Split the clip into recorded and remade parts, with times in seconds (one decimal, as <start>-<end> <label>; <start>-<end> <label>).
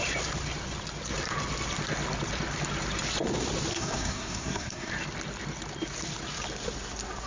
0.0-3.7 recorded; 3.7-4.9 remade; 4.9-7.3 recorded